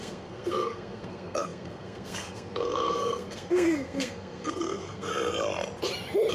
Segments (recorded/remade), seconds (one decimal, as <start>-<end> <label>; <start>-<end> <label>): 0.0-5.1 remade; 5.1-6.3 recorded